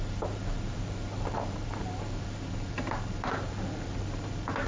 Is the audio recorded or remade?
remade